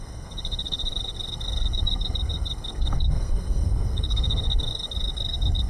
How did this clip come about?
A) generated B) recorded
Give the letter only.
A